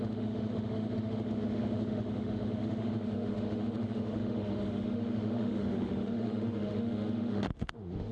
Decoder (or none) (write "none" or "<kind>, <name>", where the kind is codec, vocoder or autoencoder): autoencoder, DAC-VAE